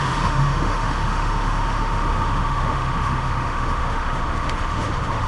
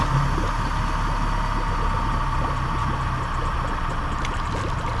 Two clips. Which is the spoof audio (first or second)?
first